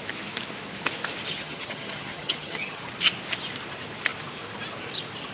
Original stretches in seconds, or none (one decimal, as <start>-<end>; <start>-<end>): 0.0-1.3; 2.8-5.3